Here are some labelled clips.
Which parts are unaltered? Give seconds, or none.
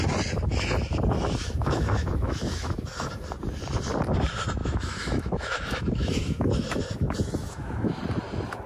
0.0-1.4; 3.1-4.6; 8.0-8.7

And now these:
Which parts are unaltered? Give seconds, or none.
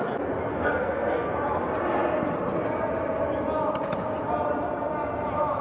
0.0-0.5; 1.3-5.6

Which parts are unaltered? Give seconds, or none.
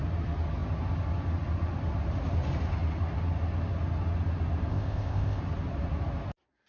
0.0-4.7; 5.4-6.7